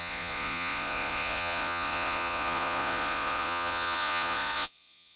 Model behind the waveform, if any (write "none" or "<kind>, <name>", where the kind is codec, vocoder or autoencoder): vocoder, Vocos